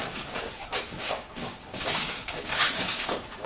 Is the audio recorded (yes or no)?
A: no